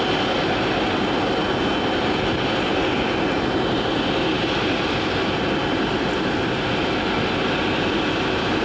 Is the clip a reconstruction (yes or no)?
no